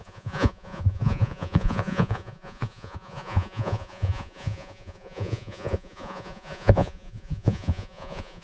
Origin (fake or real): fake